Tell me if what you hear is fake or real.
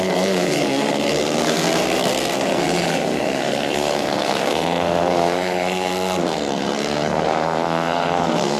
fake